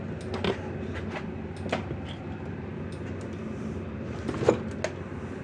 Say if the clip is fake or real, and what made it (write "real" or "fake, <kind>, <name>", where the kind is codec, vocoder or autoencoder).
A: real